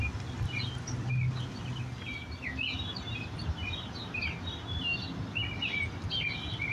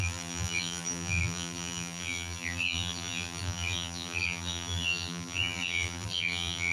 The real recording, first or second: first